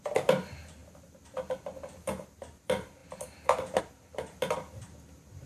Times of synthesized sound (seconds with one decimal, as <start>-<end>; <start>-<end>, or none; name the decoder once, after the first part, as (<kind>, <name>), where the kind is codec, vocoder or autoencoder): 0.0-5.5 (vocoder, BigVGAN v2)